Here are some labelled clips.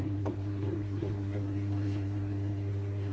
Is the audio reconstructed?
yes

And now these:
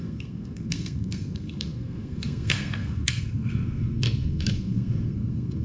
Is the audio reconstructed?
yes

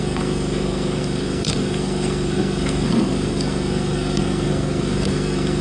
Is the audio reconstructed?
yes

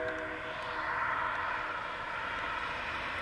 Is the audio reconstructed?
no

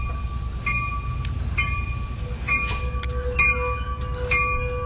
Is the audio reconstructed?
no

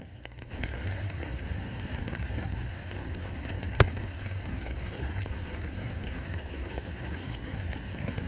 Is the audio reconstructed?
yes